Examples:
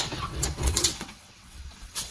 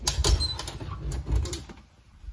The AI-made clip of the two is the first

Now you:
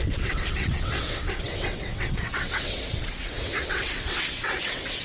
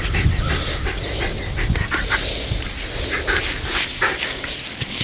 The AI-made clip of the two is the first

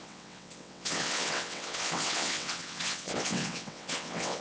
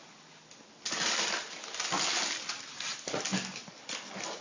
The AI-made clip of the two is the first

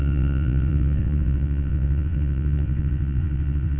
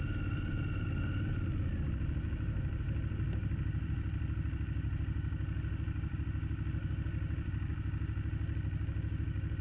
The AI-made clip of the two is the first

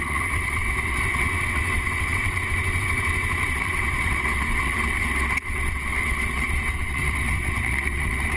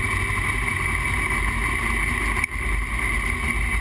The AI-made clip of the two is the first